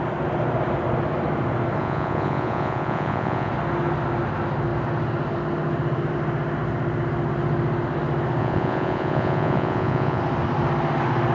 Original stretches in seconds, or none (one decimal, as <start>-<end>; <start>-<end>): 0.0-1.8; 3.5-8.4; 10.2-11.3